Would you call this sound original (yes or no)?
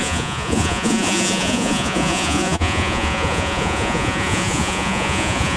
no